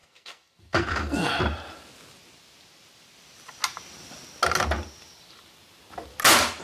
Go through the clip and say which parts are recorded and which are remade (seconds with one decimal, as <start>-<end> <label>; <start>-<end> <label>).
0.0-1.4 remade; 1.4-6.6 recorded